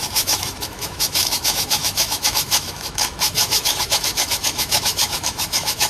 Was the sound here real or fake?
fake